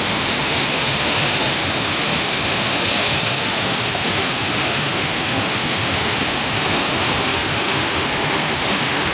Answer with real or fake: fake